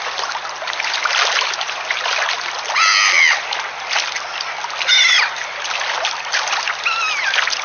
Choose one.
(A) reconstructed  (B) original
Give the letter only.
B